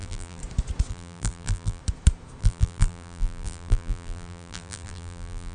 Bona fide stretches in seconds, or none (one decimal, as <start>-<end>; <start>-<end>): 0.4-0.9; 1.8-2.4